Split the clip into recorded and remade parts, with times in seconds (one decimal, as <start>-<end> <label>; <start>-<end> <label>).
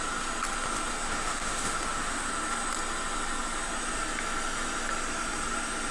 0.0-0.9 recorded; 0.9-2.3 remade; 2.3-5.9 recorded